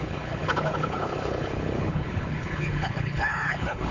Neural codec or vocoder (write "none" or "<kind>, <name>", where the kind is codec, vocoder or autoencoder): codec, HILCodec